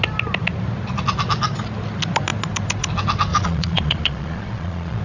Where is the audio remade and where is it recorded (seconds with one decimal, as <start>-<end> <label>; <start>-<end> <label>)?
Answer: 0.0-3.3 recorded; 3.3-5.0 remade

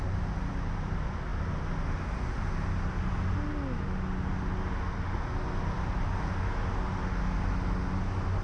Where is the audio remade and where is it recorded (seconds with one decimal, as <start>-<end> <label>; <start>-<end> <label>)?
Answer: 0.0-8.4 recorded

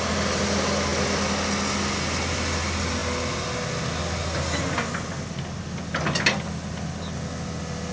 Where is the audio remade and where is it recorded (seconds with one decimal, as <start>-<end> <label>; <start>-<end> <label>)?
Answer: 0.0-7.9 recorded